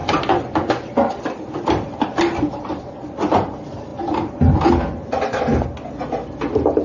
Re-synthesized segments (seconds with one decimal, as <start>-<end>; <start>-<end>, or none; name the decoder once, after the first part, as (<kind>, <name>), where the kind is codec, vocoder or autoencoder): none